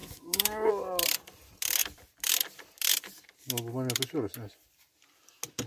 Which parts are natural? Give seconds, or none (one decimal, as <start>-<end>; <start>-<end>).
0.7-5.7